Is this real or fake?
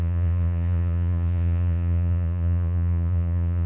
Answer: fake